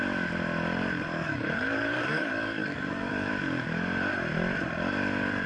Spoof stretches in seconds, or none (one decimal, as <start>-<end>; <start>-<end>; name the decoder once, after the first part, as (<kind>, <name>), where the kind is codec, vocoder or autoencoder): 1.1-3.3 (codec, DAC)